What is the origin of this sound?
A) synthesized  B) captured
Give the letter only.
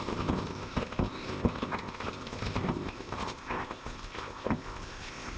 A